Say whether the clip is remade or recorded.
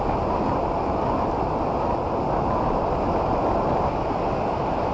recorded